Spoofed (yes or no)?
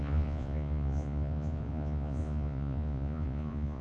yes